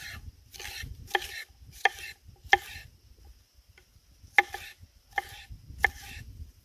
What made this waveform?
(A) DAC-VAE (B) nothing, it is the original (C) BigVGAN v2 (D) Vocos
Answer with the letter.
B